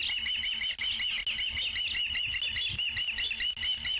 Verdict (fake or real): real